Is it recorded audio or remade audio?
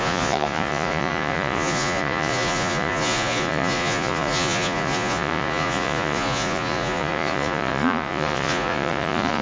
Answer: remade